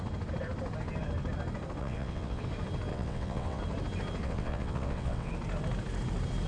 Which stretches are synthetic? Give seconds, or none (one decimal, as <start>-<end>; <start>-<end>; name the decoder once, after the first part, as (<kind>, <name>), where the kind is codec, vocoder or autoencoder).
1.8-2.4 (vocoder, WaveNeXt); 2.9-3.6; 4.2-5.3